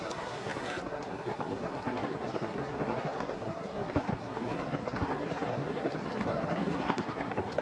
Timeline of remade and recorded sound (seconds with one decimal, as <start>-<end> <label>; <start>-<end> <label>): 0.0-7.6 remade